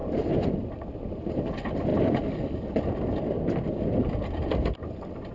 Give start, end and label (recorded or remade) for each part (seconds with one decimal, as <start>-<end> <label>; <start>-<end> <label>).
0.0-5.3 recorded